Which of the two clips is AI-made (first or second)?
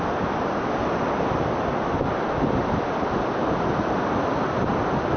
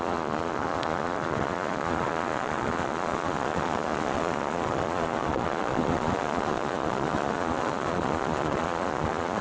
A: second